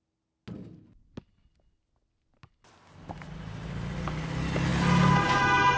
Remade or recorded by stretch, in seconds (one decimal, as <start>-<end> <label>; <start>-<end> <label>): 0.0-5.8 recorded